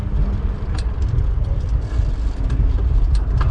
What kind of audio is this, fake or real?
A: real